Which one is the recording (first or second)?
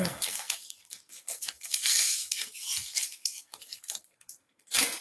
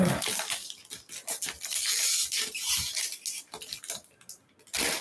second